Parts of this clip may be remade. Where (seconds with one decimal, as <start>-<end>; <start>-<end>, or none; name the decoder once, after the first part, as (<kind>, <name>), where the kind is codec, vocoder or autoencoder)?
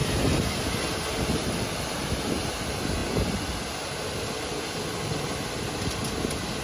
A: none